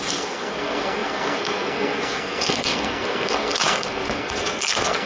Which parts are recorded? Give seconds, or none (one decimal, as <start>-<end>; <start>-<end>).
none